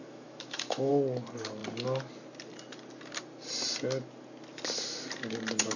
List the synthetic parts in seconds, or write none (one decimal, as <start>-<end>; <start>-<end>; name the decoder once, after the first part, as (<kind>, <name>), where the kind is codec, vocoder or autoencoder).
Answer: 0.0-0.9 (autoencoder, DAC-VAE)